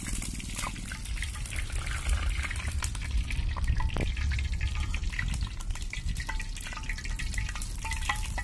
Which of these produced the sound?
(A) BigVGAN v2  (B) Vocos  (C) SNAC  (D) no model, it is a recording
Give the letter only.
D